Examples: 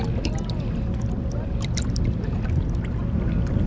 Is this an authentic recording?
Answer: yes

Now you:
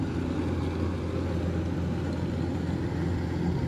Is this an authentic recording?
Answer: yes